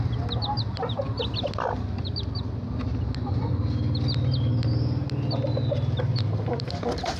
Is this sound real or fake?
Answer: real